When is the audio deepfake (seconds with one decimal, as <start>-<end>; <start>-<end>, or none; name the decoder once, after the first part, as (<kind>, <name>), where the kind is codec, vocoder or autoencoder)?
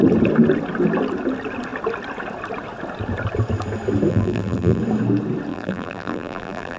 4.1-4.8 (vocoder, BigVGAN v2); 5.5-6.8